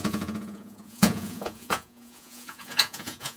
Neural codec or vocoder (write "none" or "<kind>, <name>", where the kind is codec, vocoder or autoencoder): vocoder, Vocos